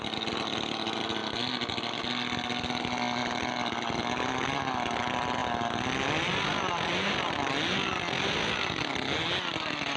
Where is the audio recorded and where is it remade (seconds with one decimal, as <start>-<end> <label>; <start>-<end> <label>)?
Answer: 0.0-10.0 recorded